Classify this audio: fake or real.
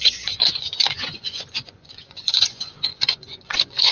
fake